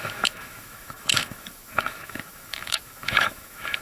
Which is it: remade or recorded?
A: remade